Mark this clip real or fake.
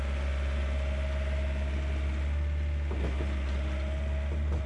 real